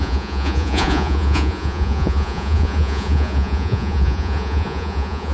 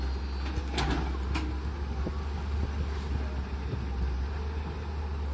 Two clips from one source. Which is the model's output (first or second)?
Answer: first